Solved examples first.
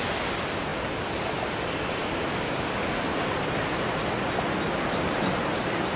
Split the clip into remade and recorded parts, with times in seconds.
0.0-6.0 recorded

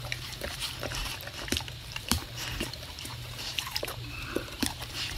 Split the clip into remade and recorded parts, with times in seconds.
0.0-1.0 remade; 1.0-1.7 recorded; 1.7-2.2 remade; 2.2-2.7 recorded; 2.7-5.2 remade

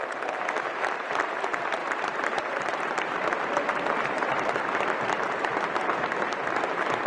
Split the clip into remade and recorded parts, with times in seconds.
0.0-1.8 recorded; 1.8-6.1 remade; 6.1-7.1 recorded

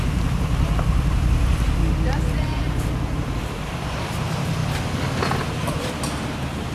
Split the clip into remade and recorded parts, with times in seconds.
0.0-1.8 remade; 1.8-2.4 recorded; 2.4-4.6 remade; 4.6-5.9 recorded; 5.9-6.7 remade

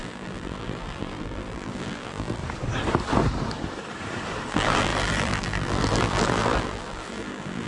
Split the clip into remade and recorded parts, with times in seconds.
0.0-2.4 remade; 2.4-4.5 recorded; 4.5-7.7 remade

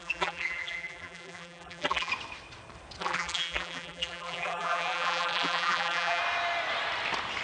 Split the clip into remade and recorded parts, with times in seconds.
0.0-2.1 remade; 2.1-3.0 recorded; 3.0-6.2 remade; 6.2-7.4 recorded

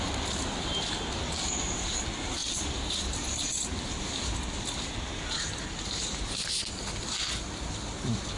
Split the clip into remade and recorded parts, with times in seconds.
0.0-2.4 recorded; 2.4-7.0 remade; 7.0-8.4 recorded